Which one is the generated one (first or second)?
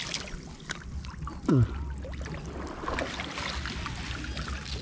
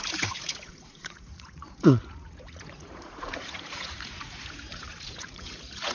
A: second